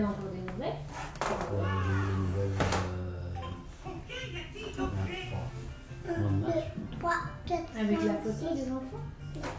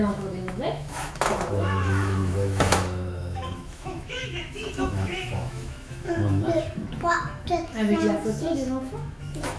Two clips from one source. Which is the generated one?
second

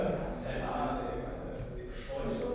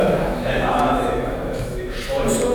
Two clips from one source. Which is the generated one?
second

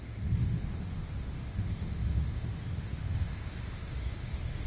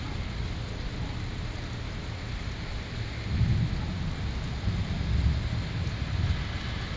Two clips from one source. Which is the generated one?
first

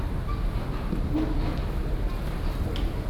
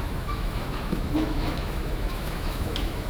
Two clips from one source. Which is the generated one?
second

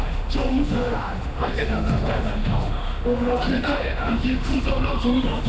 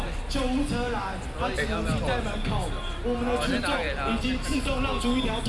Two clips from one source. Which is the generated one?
first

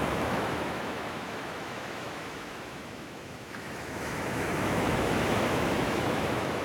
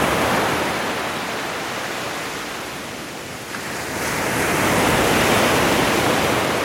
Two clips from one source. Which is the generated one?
first